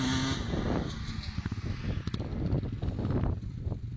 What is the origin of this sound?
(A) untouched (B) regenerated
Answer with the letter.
A